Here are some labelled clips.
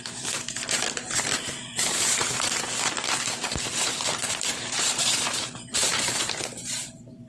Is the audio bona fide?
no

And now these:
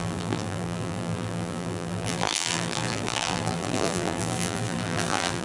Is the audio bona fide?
no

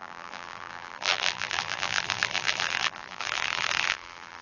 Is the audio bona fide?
no